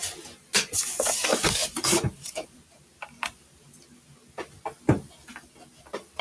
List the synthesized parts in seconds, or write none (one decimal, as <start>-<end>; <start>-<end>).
1.6-3.8